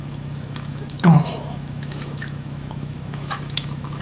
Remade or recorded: remade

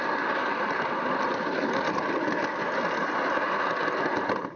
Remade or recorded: recorded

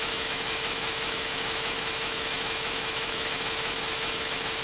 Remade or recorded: remade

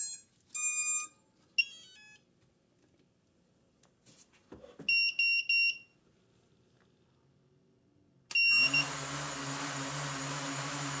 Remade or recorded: recorded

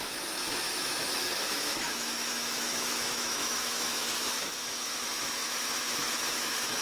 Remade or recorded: remade